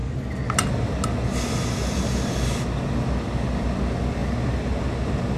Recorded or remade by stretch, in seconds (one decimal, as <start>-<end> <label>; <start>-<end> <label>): 0.0-5.4 recorded